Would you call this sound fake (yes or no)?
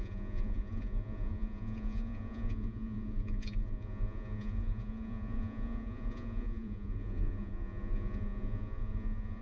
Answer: yes